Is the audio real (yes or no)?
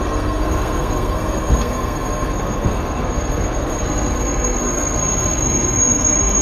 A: no